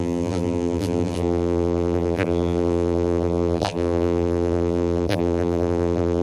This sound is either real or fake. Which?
fake